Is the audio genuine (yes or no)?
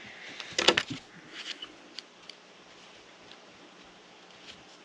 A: yes